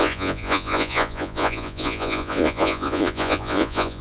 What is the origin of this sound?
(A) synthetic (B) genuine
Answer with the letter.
A